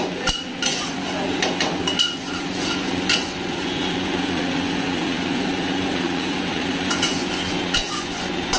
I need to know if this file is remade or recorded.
remade